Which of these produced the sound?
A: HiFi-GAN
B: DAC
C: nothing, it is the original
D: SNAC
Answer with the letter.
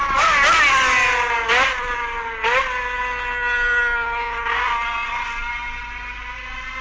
C